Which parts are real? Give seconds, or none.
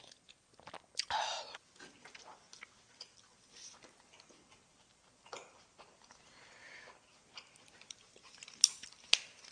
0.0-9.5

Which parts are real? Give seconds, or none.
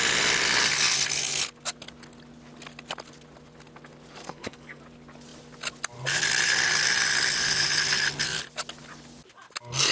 0.0-4.2; 4.8-9.9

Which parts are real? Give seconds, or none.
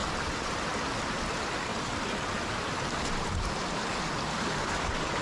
0.6-1.7; 4.0-5.2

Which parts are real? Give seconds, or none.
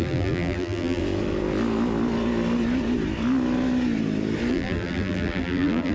1.0-4.5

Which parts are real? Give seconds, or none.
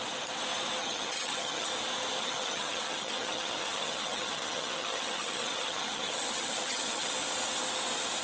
0.0-0.8; 1.7-2.2; 7.1-8.2